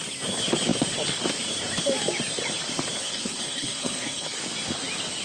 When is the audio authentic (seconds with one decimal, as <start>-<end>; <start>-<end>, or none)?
0.0-3.0; 4.4-5.2